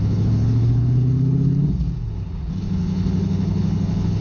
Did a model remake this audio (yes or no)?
yes